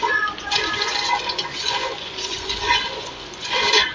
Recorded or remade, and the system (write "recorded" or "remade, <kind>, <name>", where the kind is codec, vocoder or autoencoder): remade, vocoder, Vocos